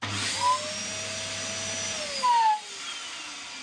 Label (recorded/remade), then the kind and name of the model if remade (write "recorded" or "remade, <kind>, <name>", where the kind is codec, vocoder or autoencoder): recorded